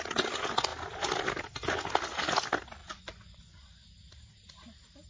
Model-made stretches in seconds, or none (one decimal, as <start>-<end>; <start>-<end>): 2.8-3.9

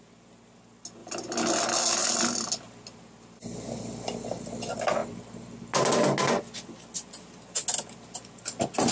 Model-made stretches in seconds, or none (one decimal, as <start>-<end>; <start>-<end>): none

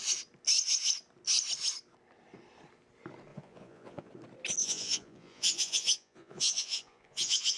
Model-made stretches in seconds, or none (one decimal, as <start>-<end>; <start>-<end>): 3.3-4.1; 4.6-7.6

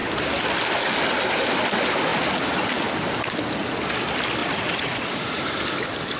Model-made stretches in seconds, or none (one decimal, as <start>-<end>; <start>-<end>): 4.4-5.4

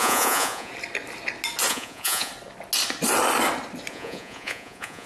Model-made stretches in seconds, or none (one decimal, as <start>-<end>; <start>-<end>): 0.0-0.7; 1.7-2.3; 3.9-5.1

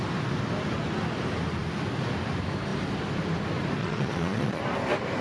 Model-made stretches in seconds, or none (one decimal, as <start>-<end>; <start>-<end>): 3.8-4.6

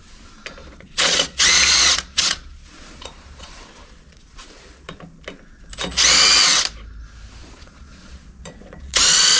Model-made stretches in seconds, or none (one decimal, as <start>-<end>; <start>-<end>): 0.6-4.9; 7.4-9.0